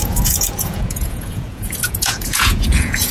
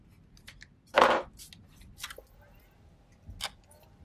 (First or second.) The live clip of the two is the second